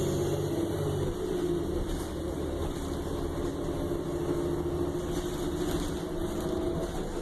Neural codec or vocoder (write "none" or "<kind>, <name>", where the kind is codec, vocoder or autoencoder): none